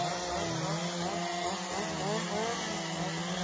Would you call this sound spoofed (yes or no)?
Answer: no